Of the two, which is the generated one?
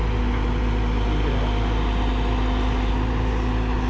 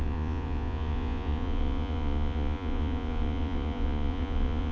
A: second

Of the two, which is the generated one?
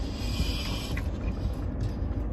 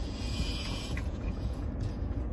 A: second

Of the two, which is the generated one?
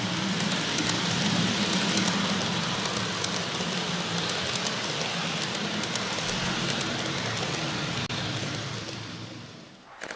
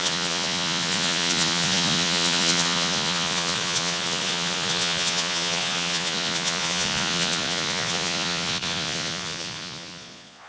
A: second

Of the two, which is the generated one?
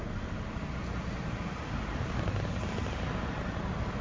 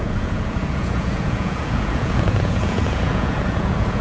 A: second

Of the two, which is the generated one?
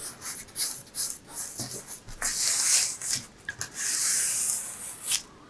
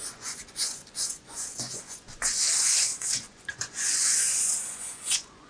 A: second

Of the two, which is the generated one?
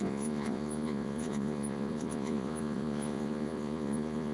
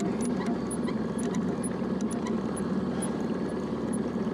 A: first